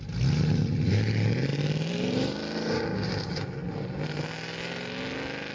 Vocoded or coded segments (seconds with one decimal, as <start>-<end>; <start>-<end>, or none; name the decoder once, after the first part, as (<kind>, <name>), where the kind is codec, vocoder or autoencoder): 1.5-2.7 (vocoder, BigVGAN v2)